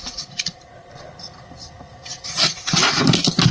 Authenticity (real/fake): real